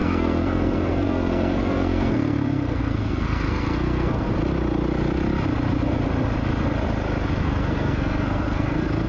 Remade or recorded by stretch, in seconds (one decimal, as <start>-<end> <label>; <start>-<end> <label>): 0.0-4.3 remade; 4.3-7.4 recorded; 7.4-9.1 remade